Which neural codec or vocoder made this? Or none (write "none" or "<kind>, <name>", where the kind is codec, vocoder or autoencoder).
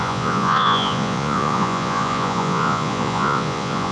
vocoder, Vocos